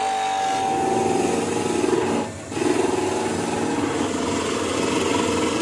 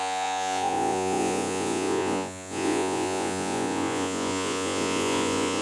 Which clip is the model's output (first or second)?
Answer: second